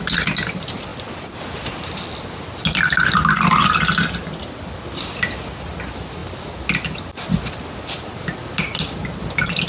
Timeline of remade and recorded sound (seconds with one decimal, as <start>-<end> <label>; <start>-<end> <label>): 0.0-9.7 recorded